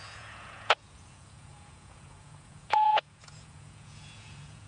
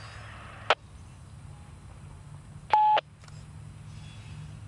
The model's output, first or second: first